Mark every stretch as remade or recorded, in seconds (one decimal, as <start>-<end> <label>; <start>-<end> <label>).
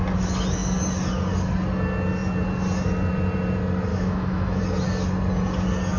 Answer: 0.0-3.9 recorded; 3.9-4.6 remade; 4.6-6.0 recorded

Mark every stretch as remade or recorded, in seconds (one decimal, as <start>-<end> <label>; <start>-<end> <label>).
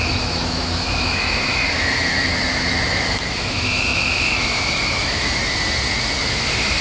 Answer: 0.0-2.3 remade; 2.3-2.9 recorded; 2.9-5.4 remade; 5.4-6.3 recorded; 6.3-6.8 remade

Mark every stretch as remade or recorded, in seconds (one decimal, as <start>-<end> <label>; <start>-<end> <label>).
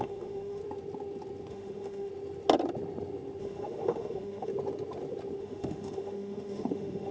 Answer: 0.0-0.6 remade; 0.6-1.5 recorded; 1.5-2.1 remade; 2.1-3.4 recorded; 3.4-4.5 remade; 4.5-5.4 recorded; 5.4-7.1 remade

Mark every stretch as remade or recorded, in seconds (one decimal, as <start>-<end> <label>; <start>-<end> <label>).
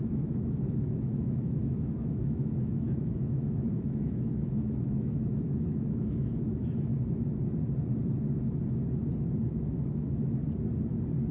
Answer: 0.0-6.9 remade; 6.9-9.4 recorded; 9.4-10.4 remade; 10.4-11.3 recorded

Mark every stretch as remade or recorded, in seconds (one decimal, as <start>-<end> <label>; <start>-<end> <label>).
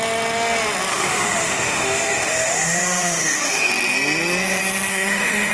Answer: 0.0-0.9 recorded; 0.9-3.7 remade; 3.7-4.9 recorded; 4.9-5.5 remade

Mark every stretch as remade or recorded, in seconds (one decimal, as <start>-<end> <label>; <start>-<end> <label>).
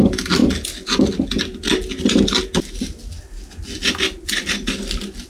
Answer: 0.0-5.3 recorded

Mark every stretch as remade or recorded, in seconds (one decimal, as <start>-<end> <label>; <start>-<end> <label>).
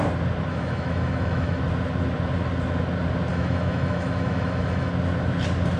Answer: 0.0-0.5 recorded; 0.5-1.6 remade; 1.6-3.3 recorded; 3.3-4.9 remade; 4.9-5.8 recorded